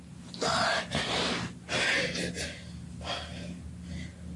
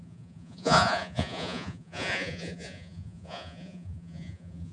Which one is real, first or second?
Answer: first